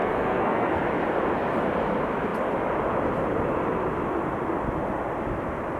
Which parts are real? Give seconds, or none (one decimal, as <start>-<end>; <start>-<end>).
0.8-5.8